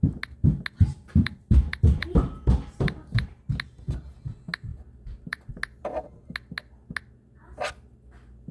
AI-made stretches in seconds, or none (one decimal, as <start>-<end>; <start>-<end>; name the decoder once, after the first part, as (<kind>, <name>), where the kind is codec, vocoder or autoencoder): 1.0-3.5 (vocoder, BigVGAN v2); 4.7-5.5